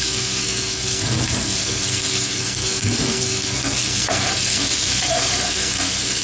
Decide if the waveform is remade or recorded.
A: remade